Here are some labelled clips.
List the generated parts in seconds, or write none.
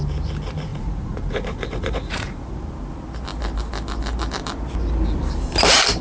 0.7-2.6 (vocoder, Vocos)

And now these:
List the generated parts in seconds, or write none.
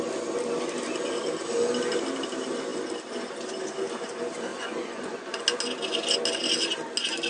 4.5-5.4 (vocoder, Vocos)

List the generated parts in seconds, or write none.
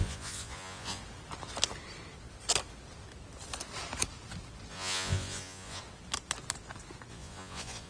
0.0-1.0 (vocoder, Vocos); 4.7-5.8; 7.1-7.9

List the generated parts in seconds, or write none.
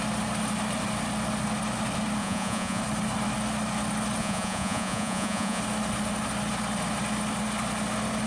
2.2-2.8 (vocoder, Vocos); 4.2-5.6